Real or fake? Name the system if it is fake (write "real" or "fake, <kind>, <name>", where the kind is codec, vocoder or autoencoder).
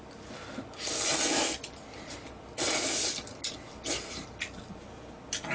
real